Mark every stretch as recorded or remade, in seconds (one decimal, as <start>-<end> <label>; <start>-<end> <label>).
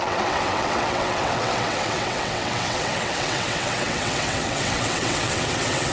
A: 0.0-5.9 remade